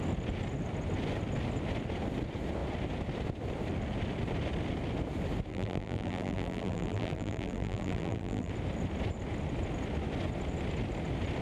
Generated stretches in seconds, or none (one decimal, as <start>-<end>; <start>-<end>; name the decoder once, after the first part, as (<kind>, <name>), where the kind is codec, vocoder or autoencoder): 5.5-8.5 (vocoder, BigVGAN v2)